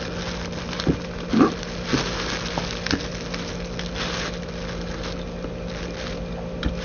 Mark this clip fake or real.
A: real